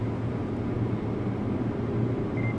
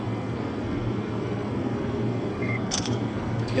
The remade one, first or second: second